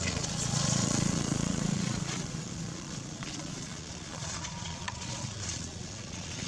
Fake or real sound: fake